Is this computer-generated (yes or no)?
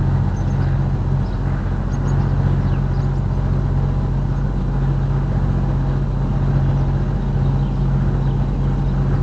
no